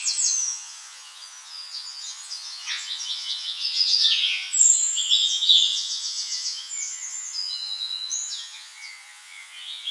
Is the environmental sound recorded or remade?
remade